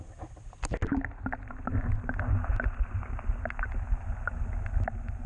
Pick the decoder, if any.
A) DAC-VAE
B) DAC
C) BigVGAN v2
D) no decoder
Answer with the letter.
D